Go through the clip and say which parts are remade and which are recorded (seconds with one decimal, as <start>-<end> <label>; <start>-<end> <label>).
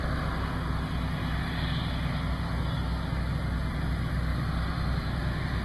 0.0-5.6 recorded